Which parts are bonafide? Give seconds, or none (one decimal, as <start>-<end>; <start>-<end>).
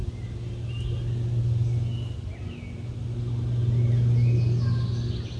0.0-5.4